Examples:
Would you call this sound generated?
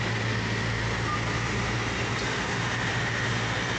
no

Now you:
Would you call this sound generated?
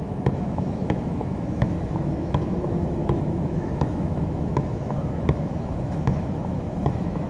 yes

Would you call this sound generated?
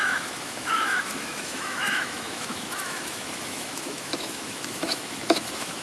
yes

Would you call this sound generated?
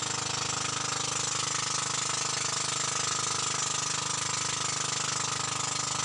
no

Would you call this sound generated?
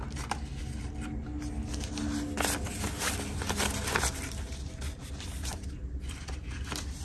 no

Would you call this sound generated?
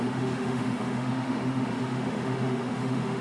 yes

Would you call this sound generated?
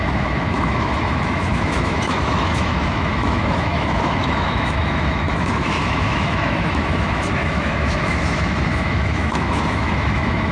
yes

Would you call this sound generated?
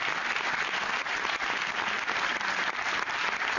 no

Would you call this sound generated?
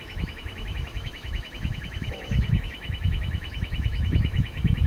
yes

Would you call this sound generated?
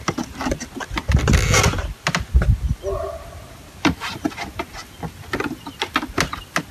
no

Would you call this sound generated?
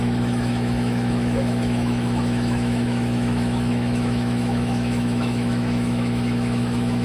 yes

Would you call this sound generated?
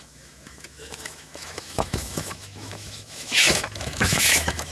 yes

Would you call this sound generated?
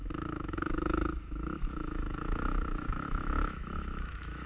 yes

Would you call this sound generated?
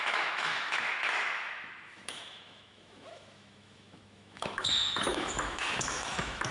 yes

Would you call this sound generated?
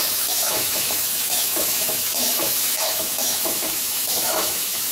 yes